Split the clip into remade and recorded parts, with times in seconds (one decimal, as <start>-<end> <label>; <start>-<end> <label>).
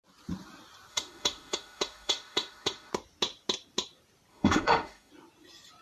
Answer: 0.0-0.9 recorded; 0.9-2.9 remade; 2.9-4.3 recorded; 4.3-5.1 remade; 5.1-5.8 recorded